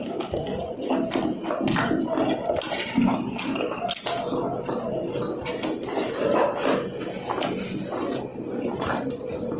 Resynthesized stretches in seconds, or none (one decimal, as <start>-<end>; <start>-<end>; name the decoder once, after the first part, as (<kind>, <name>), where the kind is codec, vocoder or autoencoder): none